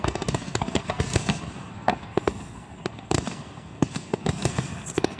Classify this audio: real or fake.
fake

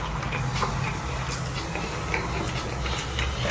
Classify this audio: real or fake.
real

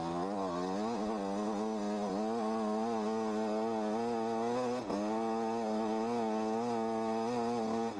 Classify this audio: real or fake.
real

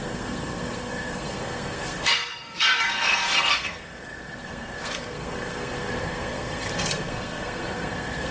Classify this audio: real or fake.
fake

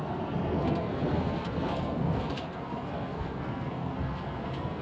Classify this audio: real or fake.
fake